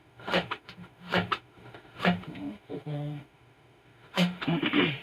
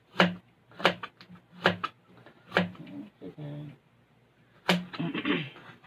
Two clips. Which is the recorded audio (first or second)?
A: second